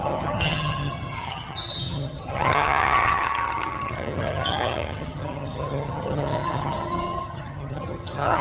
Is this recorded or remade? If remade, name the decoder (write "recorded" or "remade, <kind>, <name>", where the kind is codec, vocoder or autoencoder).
remade, vocoder, HiFi-GAN